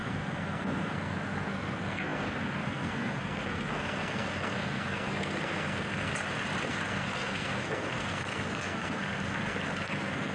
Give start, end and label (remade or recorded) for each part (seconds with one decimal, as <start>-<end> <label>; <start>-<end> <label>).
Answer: 0.0-6.1 remade; 6.1-6.7 recorded; 6.7-10.3 remade